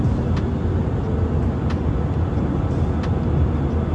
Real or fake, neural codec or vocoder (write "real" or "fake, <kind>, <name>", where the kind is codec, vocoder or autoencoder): real